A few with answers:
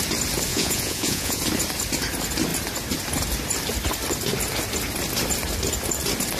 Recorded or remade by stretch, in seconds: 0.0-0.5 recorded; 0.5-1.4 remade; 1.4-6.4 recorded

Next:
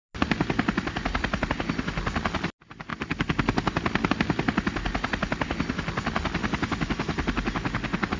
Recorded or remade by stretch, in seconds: 0.0-8.2 recorded

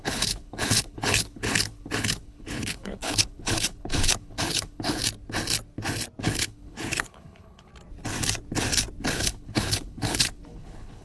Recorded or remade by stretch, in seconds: 0.0-5.0 remade; 5.0-6.2 recorded; 6.2-7.7 remade; 7.7-9.0 recorded; 9.0-11.0 remade

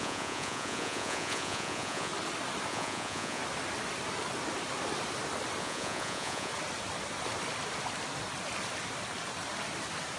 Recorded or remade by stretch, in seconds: 0.0-2.1 remade; 2.1-2.7 recorded; 2.7-3.4 remade; 3.4-5.6 recorded; 5.6-6.5 remade; 6.5-10.2 recorded

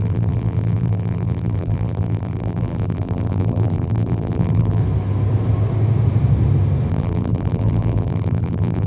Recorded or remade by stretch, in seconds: 0.0-4.8 remade; 4.8-6.9 recorded; 6.9-8.9 remade